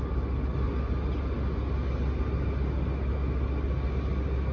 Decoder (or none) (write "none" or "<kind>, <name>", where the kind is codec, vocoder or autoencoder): none